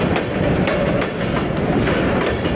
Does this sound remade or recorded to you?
recorded